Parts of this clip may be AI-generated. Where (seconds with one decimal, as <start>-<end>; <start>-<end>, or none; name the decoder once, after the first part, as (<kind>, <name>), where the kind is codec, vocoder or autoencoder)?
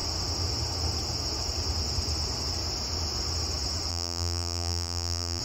3.9-5.4 (vocoder, BigVGAN v2)